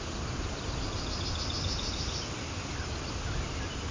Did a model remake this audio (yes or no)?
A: no